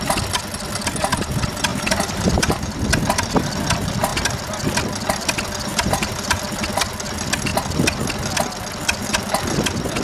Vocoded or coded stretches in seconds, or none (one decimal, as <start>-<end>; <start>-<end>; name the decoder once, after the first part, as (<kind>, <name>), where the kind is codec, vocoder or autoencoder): 1.7-2.8 (vocoder, BigVGAN v2); 5.7-6.4